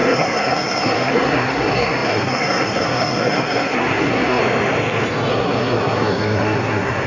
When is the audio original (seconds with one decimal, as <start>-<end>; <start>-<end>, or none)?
4.4-5.3